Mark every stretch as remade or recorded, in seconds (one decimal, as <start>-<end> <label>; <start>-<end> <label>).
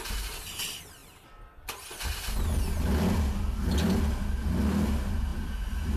0.0-6.0 recorded